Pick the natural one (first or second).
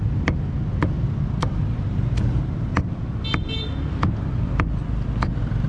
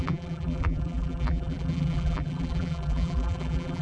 first